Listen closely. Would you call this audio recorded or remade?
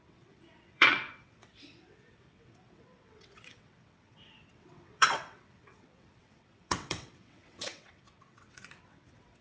remade